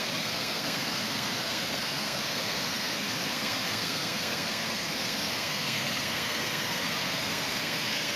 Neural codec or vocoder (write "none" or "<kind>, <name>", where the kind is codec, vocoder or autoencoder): codec, SNAC